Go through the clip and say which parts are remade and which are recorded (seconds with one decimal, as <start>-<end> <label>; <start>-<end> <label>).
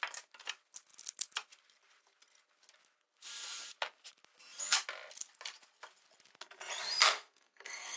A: 0.0-7.0 recorded; 7.0-8.0 remade